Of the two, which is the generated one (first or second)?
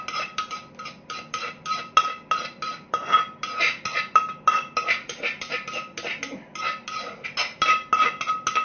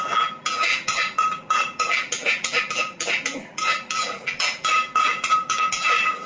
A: second